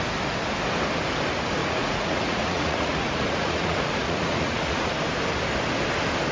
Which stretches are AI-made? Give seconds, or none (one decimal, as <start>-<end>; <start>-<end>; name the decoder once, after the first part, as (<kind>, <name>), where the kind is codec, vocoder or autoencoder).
1.6-4.9 (vocoder, Vocos)